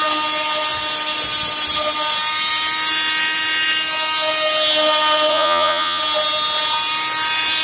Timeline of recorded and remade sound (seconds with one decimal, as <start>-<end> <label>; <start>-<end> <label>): 0.0-5.3 recorded; 5.3-6.0 remade; 6.0-7.6 recorded